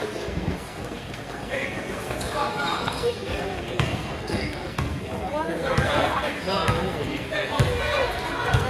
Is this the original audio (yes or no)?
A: no